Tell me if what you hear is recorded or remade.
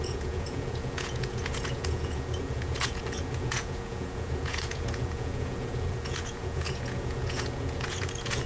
remade